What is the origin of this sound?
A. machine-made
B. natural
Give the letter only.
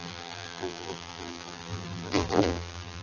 A